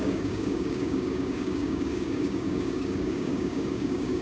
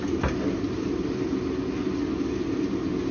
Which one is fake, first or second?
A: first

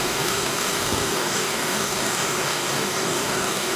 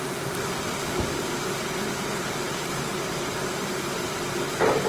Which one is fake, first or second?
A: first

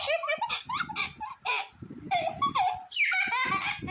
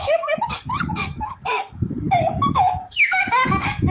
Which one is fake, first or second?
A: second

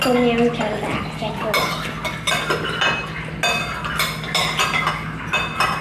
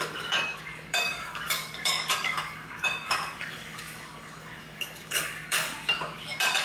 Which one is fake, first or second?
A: second